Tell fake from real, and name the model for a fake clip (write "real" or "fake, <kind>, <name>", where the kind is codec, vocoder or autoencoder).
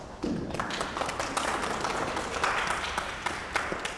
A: real